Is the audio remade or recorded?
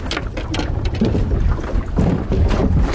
recorded